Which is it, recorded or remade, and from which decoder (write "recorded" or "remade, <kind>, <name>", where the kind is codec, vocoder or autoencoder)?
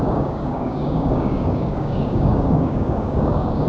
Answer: remade, codec, DAC